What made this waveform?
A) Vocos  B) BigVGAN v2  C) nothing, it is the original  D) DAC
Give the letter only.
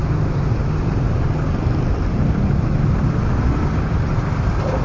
C